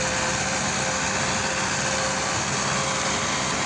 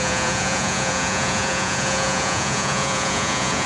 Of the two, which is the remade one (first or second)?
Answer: second